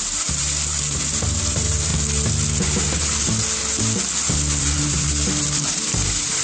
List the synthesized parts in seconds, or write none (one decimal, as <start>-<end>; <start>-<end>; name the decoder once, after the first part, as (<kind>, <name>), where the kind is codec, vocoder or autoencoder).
0.0-1.9 (vocoder, BigVGAN v2); 4.6-6.4